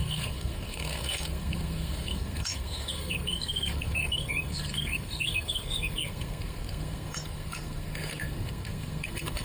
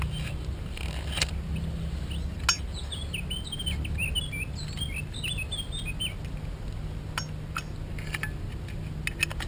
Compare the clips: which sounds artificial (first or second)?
first